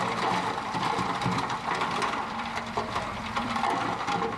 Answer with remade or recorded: remade